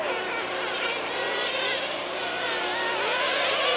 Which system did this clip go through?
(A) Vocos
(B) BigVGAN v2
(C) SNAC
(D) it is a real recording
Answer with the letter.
D